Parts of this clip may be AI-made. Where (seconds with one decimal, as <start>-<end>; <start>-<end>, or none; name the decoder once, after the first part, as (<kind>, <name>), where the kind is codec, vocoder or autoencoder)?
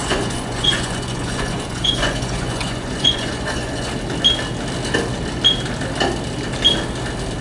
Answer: 0.0-3.9 (vocoder, Vocos)